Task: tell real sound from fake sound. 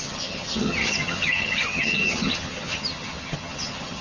fake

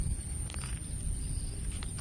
real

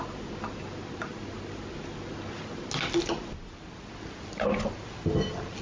real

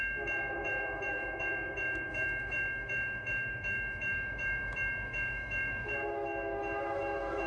fake